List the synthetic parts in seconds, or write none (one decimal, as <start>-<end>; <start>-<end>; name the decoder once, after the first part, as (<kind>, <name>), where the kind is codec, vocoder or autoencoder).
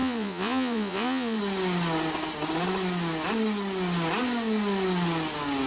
0.0-1.4 (vocoder, Vocos)